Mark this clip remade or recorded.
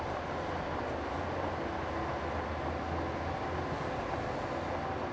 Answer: recorded